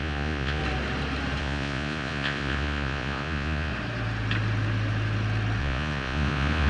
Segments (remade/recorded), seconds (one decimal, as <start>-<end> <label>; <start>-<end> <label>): 0.0-0.6 remade; 0.6-1.4 recorded; 1.4-3.7 remade; 3.7-5.6 recorded; 5.6-6.7 remade